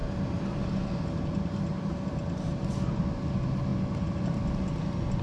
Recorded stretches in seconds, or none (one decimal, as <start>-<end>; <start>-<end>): 0.0-5.2